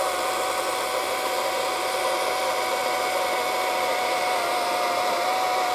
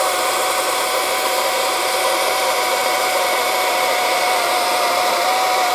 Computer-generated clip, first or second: second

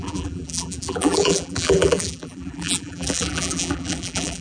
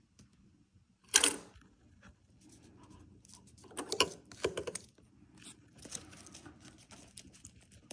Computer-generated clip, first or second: first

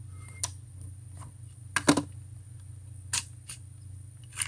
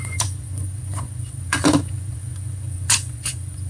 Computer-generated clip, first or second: second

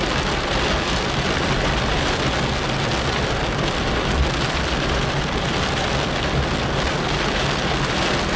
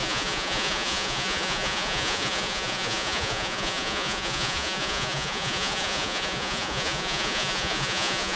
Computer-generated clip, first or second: second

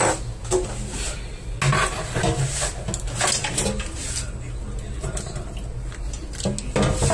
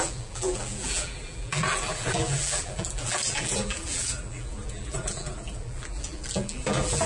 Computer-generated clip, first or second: second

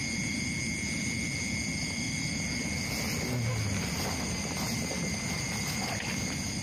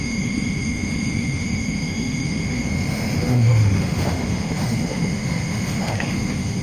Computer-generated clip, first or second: second